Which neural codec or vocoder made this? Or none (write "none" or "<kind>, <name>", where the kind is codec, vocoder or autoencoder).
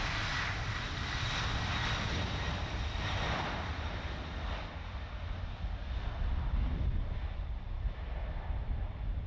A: none